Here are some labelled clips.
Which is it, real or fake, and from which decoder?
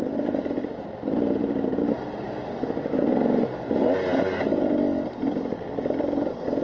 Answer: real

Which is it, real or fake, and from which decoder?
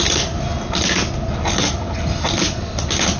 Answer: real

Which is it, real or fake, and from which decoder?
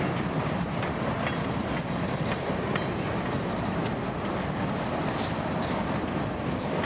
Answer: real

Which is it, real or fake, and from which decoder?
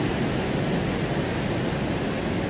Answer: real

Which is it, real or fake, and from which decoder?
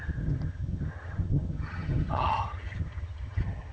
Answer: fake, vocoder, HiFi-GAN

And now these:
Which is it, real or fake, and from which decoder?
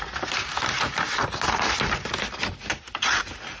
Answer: real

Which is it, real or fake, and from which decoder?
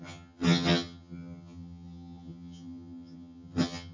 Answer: fake, vocoder, HiFi-GAN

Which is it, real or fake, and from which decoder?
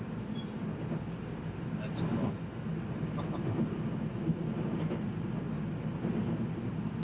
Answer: real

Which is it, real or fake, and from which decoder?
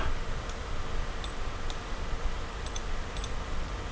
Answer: real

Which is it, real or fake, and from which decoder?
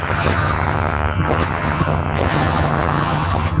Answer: fake, vocoder, HiFi-GAN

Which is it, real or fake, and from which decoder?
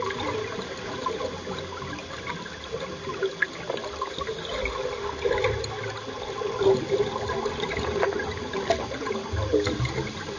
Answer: real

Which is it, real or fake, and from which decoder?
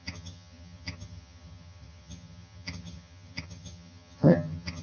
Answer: fake, vocoder, HiFi-GAN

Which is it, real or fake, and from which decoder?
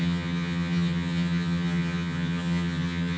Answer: fake, vocoder, HiFi-GAN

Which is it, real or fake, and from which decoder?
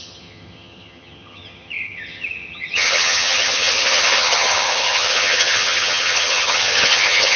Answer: fake, vocoder, HiFi-GAN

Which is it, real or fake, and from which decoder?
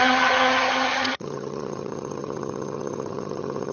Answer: fake, vocoder, HiFi-GAN